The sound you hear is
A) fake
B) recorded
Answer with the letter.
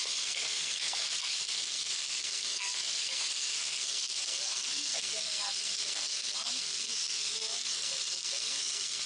A